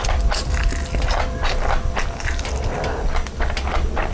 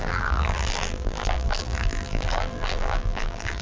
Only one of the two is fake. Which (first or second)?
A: second